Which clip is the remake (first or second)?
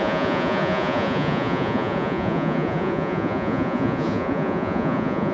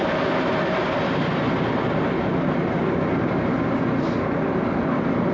first